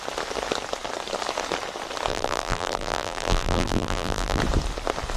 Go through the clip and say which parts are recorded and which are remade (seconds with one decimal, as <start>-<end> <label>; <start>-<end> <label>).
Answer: 0.0-2.1 recorded; 2.1-4.4 remade; 4.4-5.2 recorded